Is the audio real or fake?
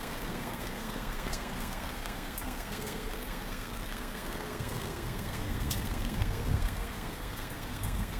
fake